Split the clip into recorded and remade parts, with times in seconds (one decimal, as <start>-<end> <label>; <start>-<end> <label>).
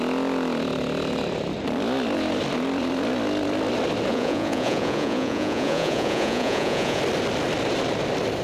0.0-4.1 recorded; 4.1-7.0 remade; 7.0-8.4 recorded